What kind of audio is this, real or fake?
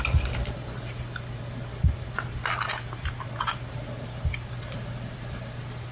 real